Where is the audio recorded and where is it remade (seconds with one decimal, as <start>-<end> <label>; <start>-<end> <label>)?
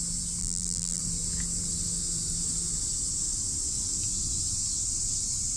0.0-0.4 recorded; 0.4-1.0 remade; 1.0-5.6 recorded